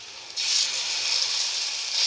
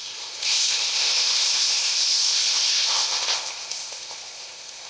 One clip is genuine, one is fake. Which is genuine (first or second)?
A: first